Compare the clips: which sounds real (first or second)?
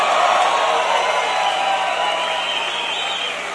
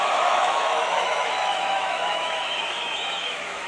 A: first